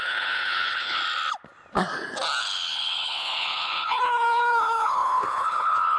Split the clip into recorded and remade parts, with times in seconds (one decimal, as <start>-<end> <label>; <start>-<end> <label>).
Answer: 0.0-1.0 remade; 1.0-2.4 recorded; 2.4-6.0 remade

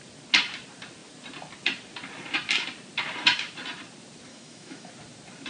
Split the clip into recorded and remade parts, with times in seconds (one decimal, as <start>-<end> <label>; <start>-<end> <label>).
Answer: 0.0-4.3 recorded; 4.3-4.9 remade; 4.9-5.5 recorded

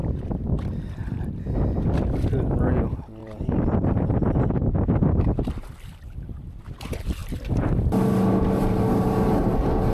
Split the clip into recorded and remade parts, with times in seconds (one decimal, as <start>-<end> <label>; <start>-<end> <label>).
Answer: 0.0-1.3 remade; 1.3-3.2 recorded; 3.2-6.6 remade; 6.6-9.9 recorded

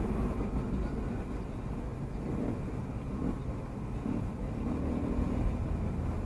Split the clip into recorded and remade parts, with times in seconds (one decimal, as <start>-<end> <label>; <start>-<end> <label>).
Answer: 0.0-6.3 recorded

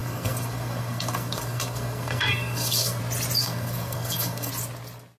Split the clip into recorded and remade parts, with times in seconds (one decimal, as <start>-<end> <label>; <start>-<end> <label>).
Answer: 0.0-3.0 remade; 3.0-3.4 recorded; 3.4-4.5 remade; 4.5-5.2 recorded